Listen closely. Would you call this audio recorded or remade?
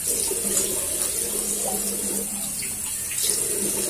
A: recorded